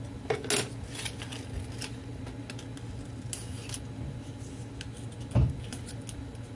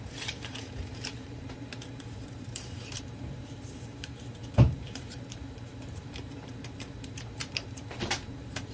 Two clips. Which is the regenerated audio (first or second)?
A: second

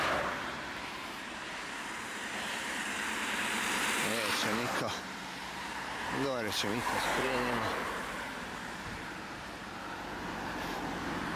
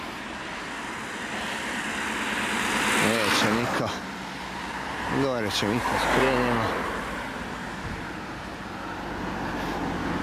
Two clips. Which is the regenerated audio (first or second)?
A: first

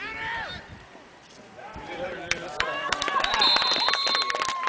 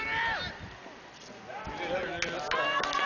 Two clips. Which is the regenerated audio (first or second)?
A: first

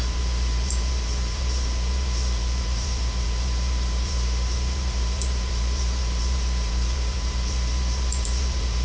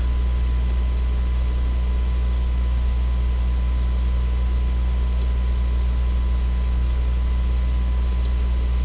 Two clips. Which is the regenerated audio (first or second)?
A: first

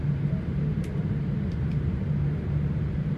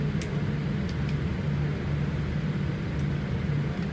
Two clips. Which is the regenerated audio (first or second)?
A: first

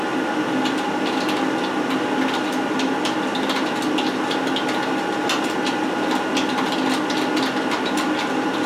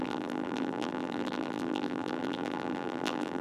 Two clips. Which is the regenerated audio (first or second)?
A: second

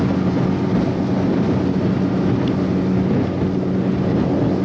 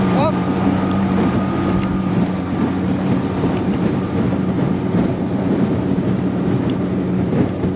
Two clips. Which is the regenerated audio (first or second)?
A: second